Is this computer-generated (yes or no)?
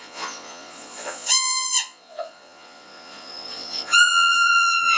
yes